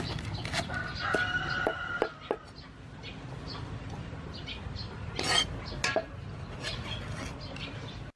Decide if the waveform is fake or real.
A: real